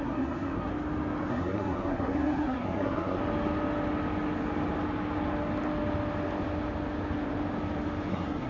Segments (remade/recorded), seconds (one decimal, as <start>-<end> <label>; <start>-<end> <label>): 0.0-0.7 remade; 0.7-1.3 recorded; 1.3-3.2 remade; 3.2-8.1 recorded; 8.1-8.5 remade

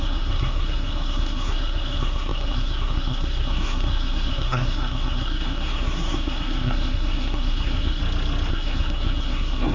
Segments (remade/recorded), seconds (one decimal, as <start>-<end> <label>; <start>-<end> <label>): 0.0-8.0 remade; 8.0-8.5 recorded; 8.5-9.7 remade

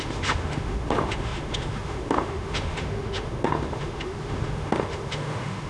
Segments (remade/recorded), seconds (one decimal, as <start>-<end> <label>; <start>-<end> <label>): 0.0-5.7 remade

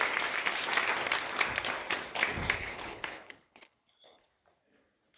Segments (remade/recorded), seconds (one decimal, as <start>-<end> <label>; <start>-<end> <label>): 0.0-2.6 recorded; 2.6-4.3 remade; 4.3-5.2 recorded

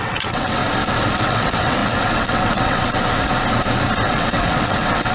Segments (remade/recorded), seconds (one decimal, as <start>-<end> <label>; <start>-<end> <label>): 0.0-0.6 remade; 0.6-1.2 recorded; 1.2-2.8 remade; 2.8-4.1 recorded; 4.1-5.1 remade

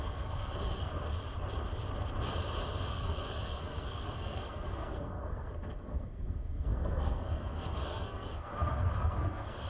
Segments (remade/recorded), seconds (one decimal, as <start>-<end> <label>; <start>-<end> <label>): 0.0-0.9 remade; 0.9-2.9 recorded; 2.9-9.7 remade